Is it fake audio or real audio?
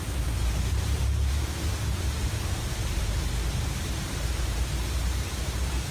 fake